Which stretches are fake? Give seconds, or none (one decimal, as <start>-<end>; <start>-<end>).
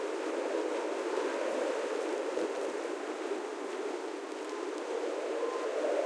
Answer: none